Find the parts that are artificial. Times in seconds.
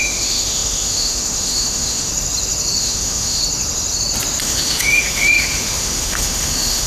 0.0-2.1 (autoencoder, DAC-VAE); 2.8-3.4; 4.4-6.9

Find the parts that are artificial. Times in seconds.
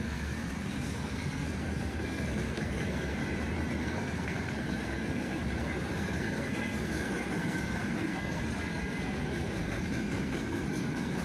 0.0-3.2 (codec, SNAC); 3.8-11.2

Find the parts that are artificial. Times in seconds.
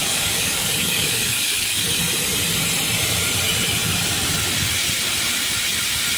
0.0-2.0 (codec, DAC)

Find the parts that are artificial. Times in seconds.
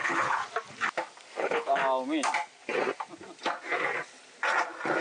0.0-0.4 (codec, HILCodec); 1.4-1.8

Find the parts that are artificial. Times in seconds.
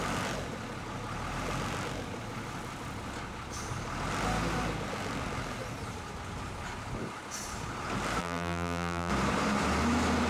8.2-9.1 (vocoder, BigVGAN v2)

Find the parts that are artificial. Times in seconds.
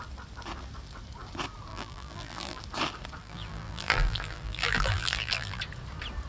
1.7-2.6 (vocoder, BigVGAN v2); 3.2-5.6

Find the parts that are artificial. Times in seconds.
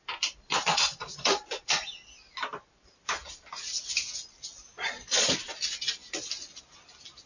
0.7-1.4 (vocoder, Vocos); 4.7-5.3